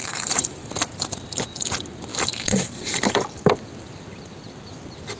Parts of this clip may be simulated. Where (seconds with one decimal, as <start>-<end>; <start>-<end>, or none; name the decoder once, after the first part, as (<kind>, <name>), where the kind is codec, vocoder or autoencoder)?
0.0-0.7 (vocoder, BigVGAN v2); 2.1-3.4

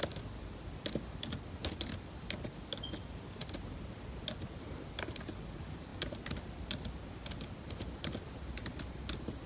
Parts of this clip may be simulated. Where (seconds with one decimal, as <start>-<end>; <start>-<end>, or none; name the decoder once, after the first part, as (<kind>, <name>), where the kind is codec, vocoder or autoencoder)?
none

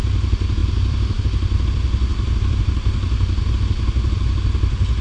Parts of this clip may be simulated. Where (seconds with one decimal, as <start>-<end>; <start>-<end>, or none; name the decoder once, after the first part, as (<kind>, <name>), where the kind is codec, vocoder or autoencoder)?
none

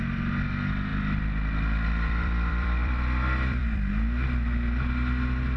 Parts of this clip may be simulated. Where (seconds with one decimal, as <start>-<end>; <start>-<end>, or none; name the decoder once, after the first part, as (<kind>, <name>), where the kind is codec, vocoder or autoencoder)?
0.9-3.9 (vocoder, BigVGAN v2)

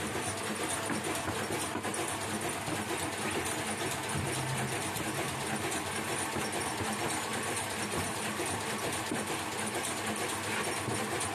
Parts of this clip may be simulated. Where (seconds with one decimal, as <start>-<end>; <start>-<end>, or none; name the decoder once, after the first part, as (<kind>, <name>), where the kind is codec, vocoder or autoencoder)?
7.3-8.4 (vocoder, BigVGAN v2)